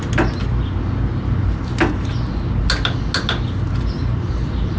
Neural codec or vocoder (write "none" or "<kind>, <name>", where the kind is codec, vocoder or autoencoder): none